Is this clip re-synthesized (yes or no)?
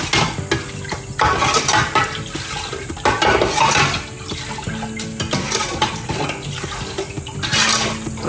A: no